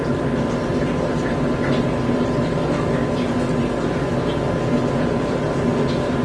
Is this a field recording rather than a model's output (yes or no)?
yes